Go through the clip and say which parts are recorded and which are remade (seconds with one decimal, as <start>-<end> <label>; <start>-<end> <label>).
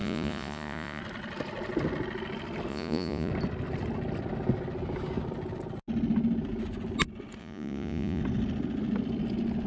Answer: 0.0-1.0 remade; 1.0-2.7 recorded; 2.7-3.3 remade; 3.3-7.4 recorded; 7.4-8.2 remade; 8.2-9.7 recorded